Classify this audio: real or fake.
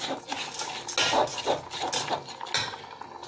real